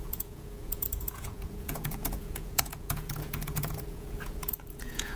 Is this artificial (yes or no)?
yes